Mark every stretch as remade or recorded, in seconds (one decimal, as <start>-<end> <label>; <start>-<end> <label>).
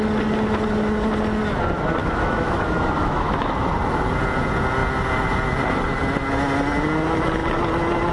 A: 0.0-2.0 recorded; 2.0-3.5 remade; 3.5-8.1 recorded